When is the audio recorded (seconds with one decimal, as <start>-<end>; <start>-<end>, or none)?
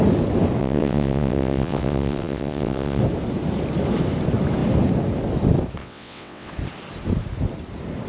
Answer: 0.0-0.6; 3.0-5.8; 6.5-8.1